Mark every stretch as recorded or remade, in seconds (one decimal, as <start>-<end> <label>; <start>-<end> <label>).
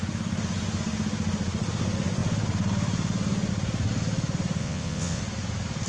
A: 0.0-4.6 recorded; 4.6-5.2 remade; 5.2-5.9 recorded